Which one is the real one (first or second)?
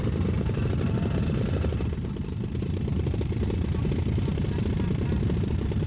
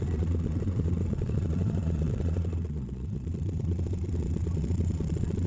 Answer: first